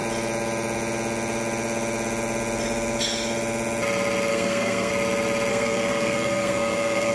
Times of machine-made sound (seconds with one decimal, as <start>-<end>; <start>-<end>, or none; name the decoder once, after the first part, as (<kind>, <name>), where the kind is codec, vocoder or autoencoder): 4.3-4.9 (codec, SNAC); 5.5-7.1